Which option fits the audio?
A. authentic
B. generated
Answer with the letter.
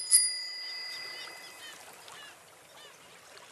A